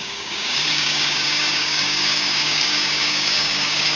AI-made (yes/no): yes